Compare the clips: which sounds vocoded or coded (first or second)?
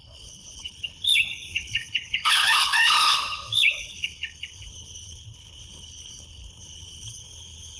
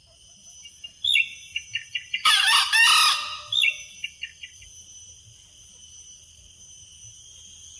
first